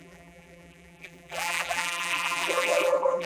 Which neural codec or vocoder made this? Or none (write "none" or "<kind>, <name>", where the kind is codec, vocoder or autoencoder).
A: vocoder, BigVGAN v2